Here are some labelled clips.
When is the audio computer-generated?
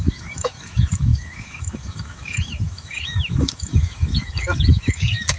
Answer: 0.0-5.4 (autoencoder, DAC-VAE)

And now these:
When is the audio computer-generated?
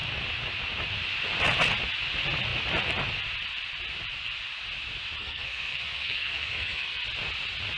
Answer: 5.2-7.0 (codec, SNAC)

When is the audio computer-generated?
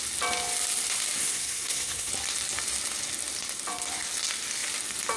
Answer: 1.2-2.1 (codec, SNAC)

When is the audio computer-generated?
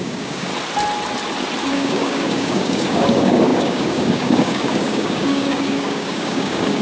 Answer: 0.0-0.5 (codec, DAC); 1.7-6.8